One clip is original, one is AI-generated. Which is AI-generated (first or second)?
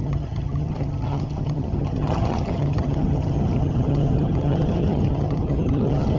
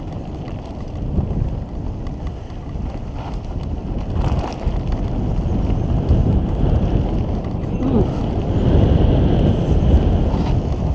first